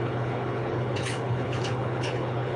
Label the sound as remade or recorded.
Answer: remade